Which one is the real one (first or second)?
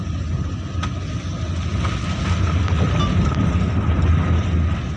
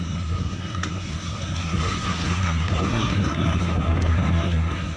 first